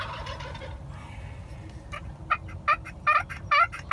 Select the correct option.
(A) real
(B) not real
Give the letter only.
A